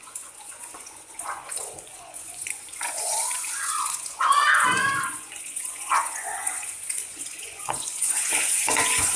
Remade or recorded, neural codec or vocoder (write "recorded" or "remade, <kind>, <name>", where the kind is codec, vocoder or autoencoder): remade, vocoder, Vocos